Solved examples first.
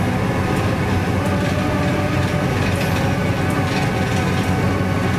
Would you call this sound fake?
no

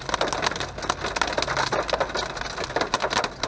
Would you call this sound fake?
no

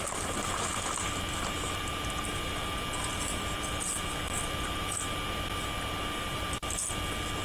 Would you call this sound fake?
no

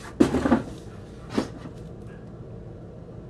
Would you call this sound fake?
no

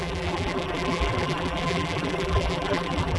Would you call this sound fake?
yes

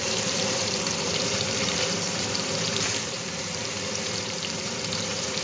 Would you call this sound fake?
yes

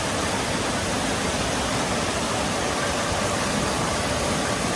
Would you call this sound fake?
no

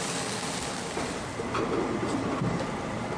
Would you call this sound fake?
no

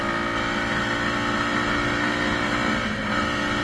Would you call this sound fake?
no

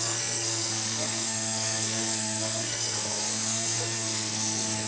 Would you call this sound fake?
yes